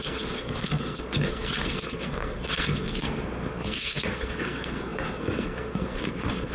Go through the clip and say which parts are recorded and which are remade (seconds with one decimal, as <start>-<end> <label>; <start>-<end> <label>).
0.0-6.5 remade